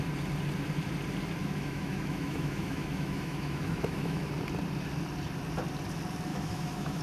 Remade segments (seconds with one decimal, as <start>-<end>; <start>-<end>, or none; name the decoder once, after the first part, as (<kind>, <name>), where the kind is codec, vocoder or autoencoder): 1.4-4.3 (autoencoder, DAC-VAE); 6.3-7.0